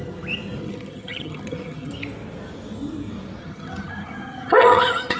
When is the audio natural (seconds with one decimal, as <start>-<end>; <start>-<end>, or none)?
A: 0.0-0.6; 1.9-3.4